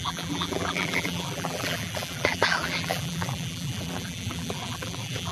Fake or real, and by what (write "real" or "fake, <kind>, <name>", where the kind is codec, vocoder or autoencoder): fake, vocoder, BigVGAN v2